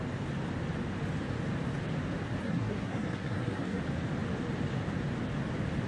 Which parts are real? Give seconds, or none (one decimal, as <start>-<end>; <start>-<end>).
0.0-2.4; 3.8-5.9

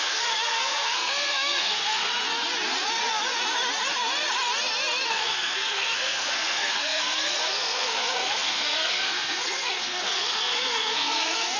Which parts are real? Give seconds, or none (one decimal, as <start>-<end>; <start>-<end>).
2.1-5.1

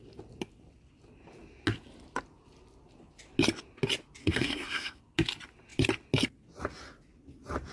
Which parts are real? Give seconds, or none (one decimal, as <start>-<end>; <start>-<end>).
0.0-4.2; 5.0-7.7

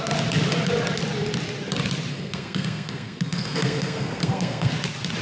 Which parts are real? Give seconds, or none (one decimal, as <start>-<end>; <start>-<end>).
0.0-2.1; 4.7-5.2

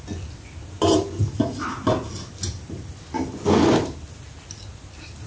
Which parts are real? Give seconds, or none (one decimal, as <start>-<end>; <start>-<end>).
0.0-5.3

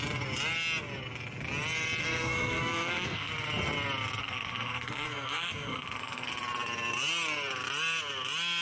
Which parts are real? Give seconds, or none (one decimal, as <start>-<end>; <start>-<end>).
0.0-2.0; 3.3-4.2; 6.3-8.6

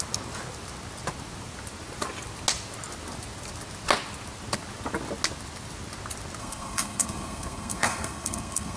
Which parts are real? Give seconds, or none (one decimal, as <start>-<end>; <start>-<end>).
0.0-6.4

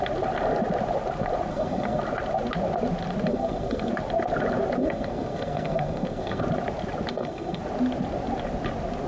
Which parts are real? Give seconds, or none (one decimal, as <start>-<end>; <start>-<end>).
0.0-1.5; 2.0-3.3; 3.9-4.8; 6.4-7.1; 7.6-9.1